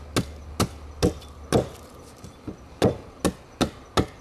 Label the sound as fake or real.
real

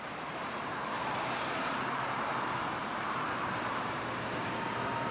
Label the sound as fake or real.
fake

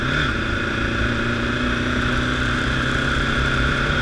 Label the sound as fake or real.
fake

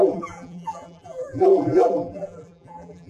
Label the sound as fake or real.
fake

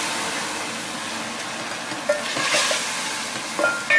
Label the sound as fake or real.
real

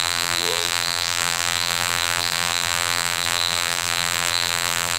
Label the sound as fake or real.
fake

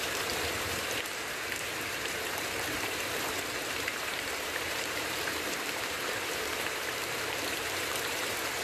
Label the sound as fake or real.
fake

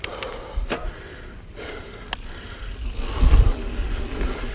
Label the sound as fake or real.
real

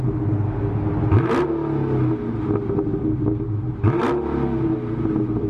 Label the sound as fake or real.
real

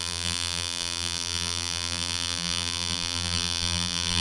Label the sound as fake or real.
fake